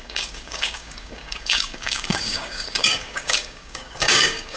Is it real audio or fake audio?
fake